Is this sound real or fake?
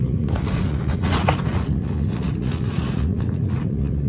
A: fake